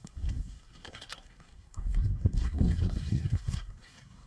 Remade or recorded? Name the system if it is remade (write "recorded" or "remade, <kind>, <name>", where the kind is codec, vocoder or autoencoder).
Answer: remade, codec, SNAC